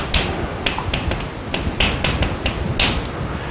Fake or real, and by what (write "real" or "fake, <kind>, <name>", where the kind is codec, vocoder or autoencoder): real